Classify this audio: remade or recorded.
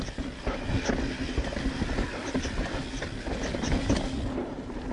recorded